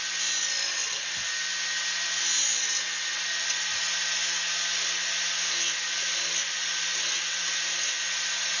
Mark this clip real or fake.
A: real